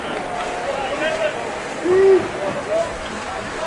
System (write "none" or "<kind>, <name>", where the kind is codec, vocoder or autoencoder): none